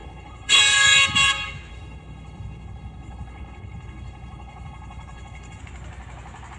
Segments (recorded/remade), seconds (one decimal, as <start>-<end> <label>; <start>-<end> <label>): 0.0-0.6 remade; 0.6-1.7 recorded; 1.7-5.6 remade; 5.6-6.6 recorded